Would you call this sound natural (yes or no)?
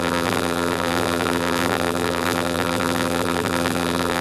no